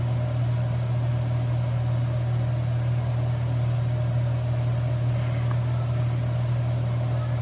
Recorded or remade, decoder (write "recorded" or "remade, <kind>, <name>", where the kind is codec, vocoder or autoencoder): recorded